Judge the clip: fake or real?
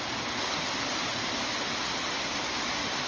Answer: real